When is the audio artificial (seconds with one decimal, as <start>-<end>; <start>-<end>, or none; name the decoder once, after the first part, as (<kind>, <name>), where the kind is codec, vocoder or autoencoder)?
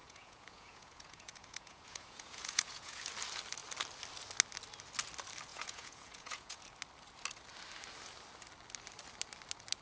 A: 0.0-3.0 (vocoder, Vocos); 5.5-6.6